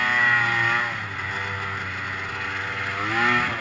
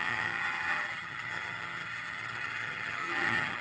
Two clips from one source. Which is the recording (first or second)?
first